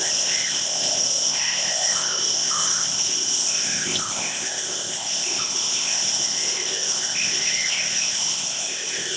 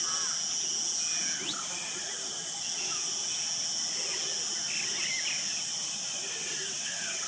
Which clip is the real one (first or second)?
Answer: second